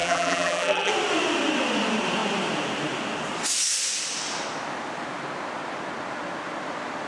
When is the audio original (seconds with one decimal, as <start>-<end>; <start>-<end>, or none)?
0.9-7.1